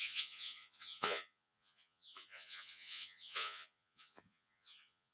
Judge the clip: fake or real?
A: fake